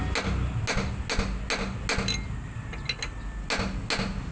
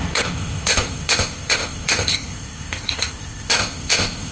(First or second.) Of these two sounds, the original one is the first